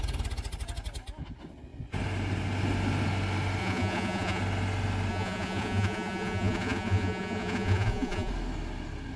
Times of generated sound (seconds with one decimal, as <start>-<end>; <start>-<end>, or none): 3.6-4.4; 5.1-8.3